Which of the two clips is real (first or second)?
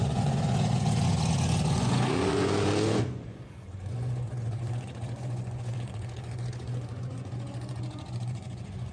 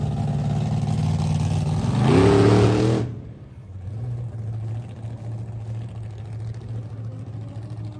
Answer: second